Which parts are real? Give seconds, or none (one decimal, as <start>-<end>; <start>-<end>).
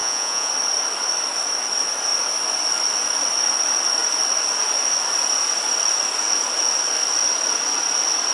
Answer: 0.5-8.3